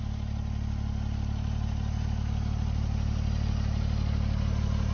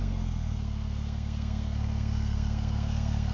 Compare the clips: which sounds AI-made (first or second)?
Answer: second